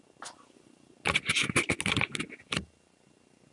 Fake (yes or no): no